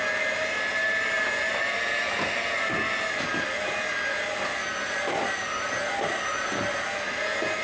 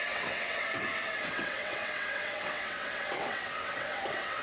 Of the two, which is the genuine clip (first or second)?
first